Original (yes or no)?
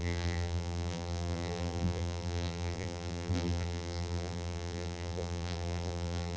no